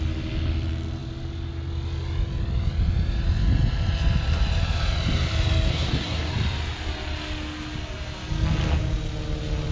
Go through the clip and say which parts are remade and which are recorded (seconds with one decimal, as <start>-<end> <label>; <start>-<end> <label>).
0.0-5.7 recorded; 5.7-6.3 remade; 6.3-9.7 recorded